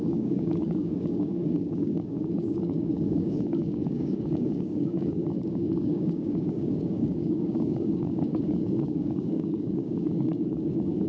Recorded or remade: remade